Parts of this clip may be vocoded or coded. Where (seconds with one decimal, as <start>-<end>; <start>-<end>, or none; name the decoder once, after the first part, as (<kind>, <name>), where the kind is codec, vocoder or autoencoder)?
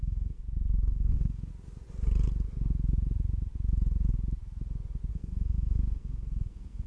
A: 0.0-0.4 (codec, SNAC); 0.9-1.5; 5.1-6.9